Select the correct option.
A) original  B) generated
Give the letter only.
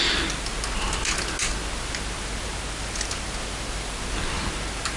A